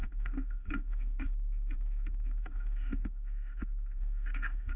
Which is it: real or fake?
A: fake